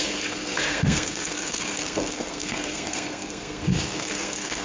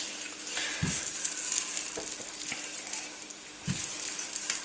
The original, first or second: second